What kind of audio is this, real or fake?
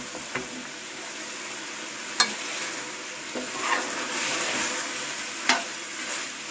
real